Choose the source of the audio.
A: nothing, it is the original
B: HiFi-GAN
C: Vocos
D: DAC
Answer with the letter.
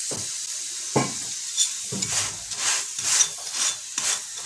A